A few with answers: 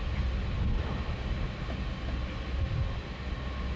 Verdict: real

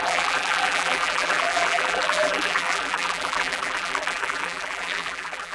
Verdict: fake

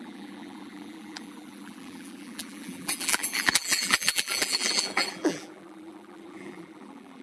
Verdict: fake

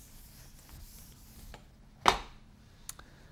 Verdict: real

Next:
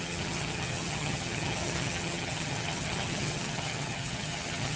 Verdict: fake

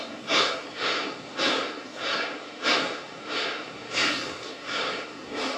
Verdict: fake